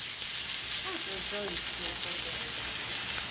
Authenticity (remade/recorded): recorded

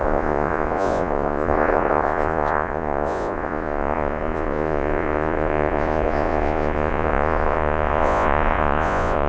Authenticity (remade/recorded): remade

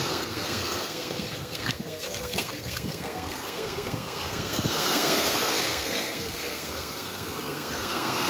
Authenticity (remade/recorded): remade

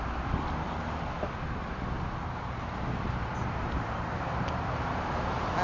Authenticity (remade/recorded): recorded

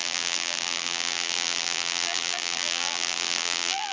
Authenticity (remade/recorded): remade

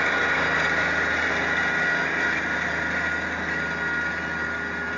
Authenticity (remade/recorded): recorded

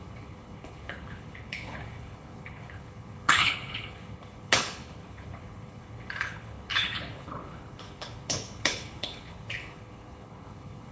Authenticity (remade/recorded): remade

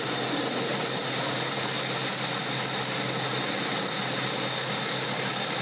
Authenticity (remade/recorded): recorded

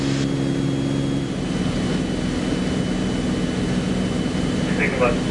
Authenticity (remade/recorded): recorded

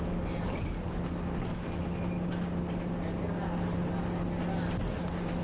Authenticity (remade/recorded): recorded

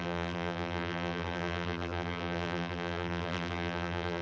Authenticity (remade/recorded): remade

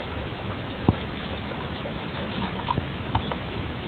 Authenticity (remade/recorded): remade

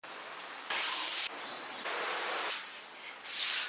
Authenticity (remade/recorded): recorded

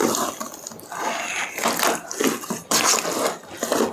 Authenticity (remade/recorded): recorded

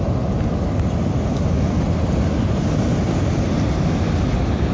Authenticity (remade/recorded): recorded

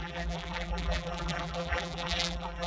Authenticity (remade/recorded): remade